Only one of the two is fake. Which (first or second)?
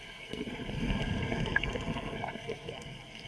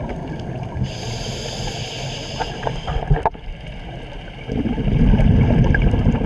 first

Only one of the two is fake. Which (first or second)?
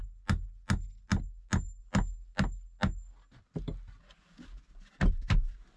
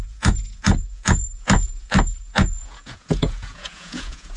second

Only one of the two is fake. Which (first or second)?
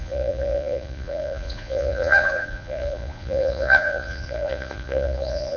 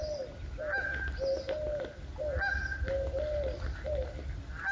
first